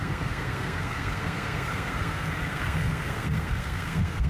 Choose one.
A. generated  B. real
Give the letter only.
A